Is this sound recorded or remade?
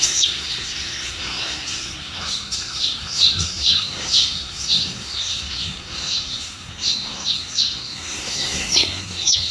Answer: remade